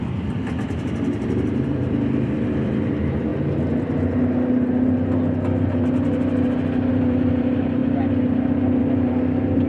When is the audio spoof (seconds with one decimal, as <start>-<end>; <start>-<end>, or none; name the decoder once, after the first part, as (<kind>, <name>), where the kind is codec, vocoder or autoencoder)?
0.0-3.3 (vocoder, BigVGAN v2); 6.9-7.8; 8.8-9.7